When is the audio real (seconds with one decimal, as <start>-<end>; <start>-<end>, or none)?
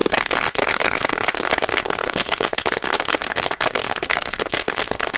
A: none